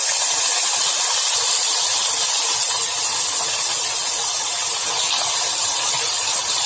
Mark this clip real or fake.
real